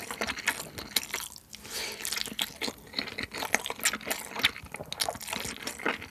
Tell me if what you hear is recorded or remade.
recorded